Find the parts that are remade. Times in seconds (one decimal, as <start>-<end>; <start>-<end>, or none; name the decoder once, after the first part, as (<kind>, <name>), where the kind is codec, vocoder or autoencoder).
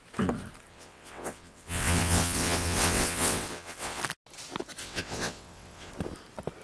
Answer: 0.7-4.0 (vocoder, WaveNeXt); 4.8-5.9